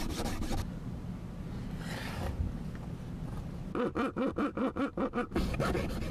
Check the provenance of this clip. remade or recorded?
recorded